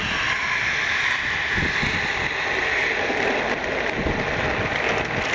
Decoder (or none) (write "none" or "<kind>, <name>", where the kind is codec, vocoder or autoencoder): none